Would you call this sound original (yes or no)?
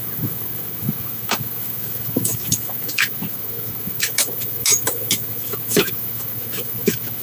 no